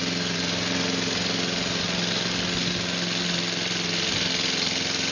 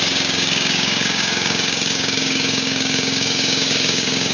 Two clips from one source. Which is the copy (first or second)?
second